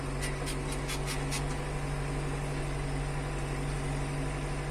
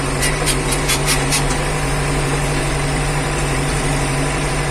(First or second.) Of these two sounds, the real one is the first